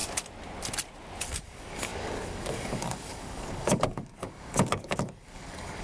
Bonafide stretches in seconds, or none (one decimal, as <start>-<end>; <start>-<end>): 0.0-1.3